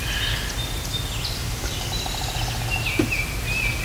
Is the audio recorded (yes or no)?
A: yes